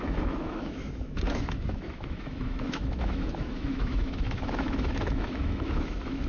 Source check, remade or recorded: remade